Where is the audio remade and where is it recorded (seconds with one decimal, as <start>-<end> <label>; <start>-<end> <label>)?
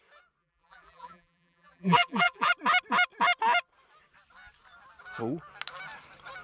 0.0-0.4 recorded; 0.4-2.5 remade; 2.5-6.4 recorded